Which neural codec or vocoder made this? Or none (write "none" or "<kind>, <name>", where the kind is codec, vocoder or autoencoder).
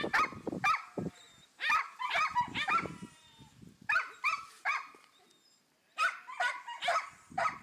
none